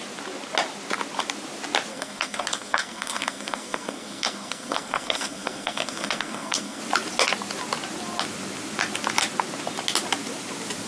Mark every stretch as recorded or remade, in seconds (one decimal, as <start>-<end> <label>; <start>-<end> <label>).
0.0-1.9 recorded; 1.9-6.8 remade; 6.8-10.9 recorded

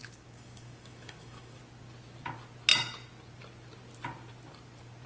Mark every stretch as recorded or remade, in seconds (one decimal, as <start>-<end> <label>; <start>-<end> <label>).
0.0-1.6 remade; 1.6-5.1 recorded

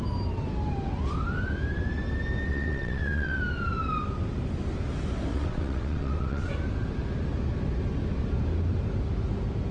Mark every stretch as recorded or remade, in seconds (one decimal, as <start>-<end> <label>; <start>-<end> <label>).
0.0-2.5 recorded; 2.5-3.4 remade; 3.4-5.3 recorded; 5.3-6.5 remade; 6.5-9.7 recorded